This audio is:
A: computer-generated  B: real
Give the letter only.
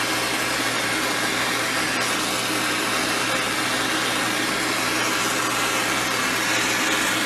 B